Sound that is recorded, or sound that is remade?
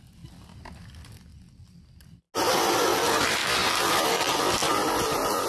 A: recorded